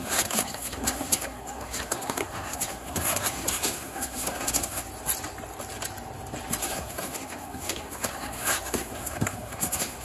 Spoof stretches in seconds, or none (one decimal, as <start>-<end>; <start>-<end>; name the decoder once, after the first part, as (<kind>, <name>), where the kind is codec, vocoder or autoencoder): 0.0-4.9 (codec, SNAC); 6.6-10.0